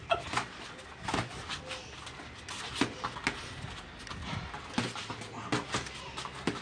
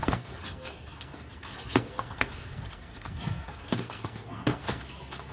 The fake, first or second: second